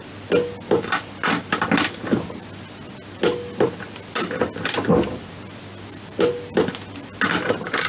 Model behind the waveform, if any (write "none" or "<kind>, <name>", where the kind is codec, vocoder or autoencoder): none